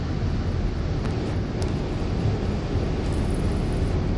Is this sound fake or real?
real